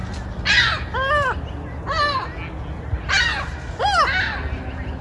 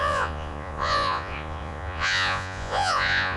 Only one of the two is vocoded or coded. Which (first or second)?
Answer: second